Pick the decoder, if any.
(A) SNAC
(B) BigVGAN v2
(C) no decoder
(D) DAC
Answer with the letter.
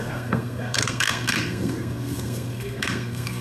A